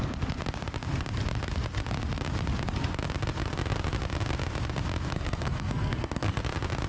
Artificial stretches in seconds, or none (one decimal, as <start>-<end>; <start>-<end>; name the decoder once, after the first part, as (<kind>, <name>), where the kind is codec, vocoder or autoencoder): 5.1-6.4 (codec, SNAC)